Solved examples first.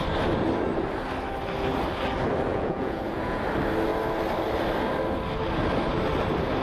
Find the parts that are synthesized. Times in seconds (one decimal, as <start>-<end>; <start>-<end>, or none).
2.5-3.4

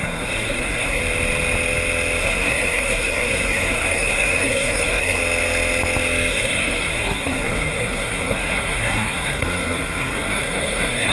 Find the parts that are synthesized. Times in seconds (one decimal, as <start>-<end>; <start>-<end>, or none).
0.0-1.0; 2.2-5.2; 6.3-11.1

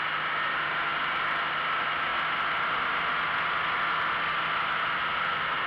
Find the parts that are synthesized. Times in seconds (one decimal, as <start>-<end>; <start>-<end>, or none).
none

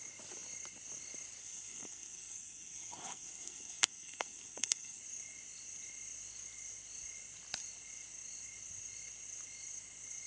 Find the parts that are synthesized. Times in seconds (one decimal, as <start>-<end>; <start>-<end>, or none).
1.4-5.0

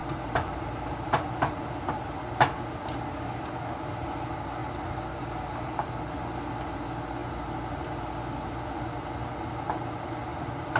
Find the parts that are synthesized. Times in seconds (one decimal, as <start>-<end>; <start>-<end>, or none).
0.0-2.1; 4.6-5.9; 7.2-8.3

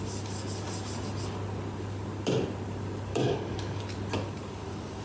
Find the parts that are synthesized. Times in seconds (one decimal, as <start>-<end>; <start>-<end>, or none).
3.1-3.8